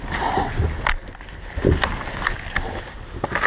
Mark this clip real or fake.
fake